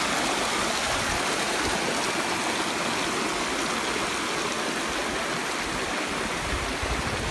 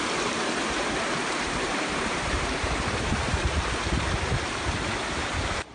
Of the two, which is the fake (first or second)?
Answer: second